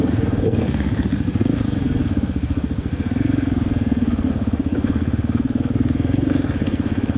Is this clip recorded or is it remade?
remade